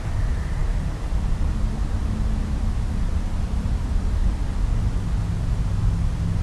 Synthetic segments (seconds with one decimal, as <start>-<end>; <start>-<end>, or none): none